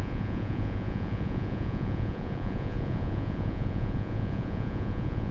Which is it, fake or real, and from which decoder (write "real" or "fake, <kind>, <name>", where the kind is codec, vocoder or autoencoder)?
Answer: fake, vocoder, Vocos